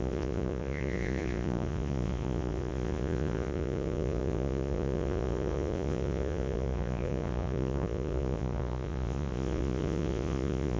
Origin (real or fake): fake